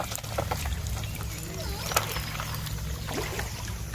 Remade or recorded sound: recorded